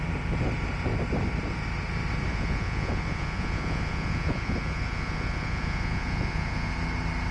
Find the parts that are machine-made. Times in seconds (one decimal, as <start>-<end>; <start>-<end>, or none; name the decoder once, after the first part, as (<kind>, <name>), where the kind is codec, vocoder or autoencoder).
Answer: 2.3-6.7 (vocoder, Vocos)